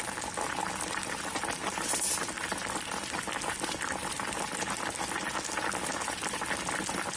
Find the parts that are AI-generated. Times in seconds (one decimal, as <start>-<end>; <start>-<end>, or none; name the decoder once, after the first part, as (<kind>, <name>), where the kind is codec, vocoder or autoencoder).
none